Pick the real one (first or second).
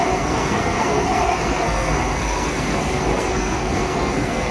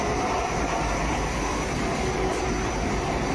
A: second